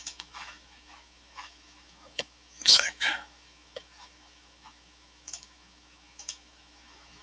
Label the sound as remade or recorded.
remade